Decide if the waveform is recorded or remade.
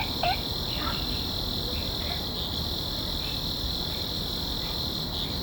recorded